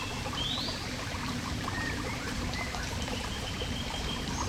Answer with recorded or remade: remade